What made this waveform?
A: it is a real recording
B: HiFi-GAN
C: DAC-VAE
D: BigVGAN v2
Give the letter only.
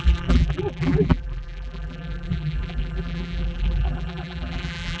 D